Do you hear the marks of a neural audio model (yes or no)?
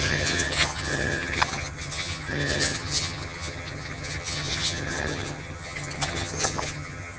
yes